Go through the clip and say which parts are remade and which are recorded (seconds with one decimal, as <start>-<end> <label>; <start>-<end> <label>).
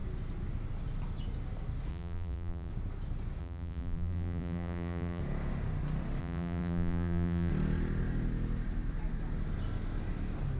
0.0-1.9 recorded; 1.9-2.7 remade; 2.7-3.4 recorded; 3.4-5.2 remade; 5.2-6.2 recorded; 6.2-7.5 remade; 7.5-10.6 recorded